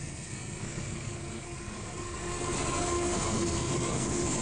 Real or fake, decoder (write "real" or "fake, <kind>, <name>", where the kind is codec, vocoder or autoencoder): fake, codec, SNAC